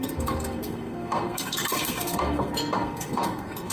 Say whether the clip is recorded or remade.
remade